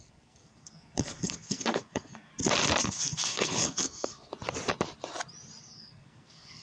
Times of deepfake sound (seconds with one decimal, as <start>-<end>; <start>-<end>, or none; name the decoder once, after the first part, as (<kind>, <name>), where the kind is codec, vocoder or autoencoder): 0.0-2.3 (codec, SNAC); 2.8-4.3; 5.6-6.6

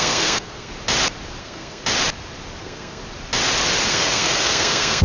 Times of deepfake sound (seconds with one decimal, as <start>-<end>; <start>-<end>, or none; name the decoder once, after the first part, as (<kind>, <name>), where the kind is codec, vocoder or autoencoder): 0.0-0.7 (codec, SNAC); 1.4-1.8; 2.6-3.0; 3.9-5.0

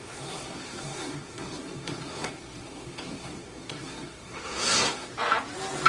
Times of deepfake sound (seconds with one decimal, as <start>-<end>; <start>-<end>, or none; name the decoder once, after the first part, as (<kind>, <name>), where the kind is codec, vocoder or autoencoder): 0.0-5.1 (codec, SNAC)

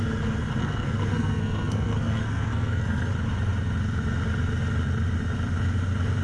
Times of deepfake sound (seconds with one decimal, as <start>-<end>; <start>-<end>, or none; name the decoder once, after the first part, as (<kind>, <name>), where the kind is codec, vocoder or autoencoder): 0.6-3.1 (codec, SNAC)

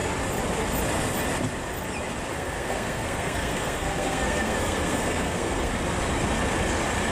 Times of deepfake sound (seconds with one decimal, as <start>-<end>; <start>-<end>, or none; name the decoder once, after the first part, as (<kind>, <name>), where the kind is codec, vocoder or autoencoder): 2.3-5.7 (codec, SNAC)